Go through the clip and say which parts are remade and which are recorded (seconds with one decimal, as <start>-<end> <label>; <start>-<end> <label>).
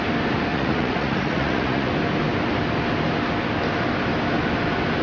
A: 0.0-0.5 recorded; 0.5-1.9 remade; 1.9-5.0 recorded